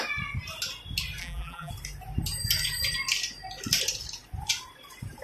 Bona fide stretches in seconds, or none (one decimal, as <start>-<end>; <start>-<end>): 0.0-1.2; 1.7-5.2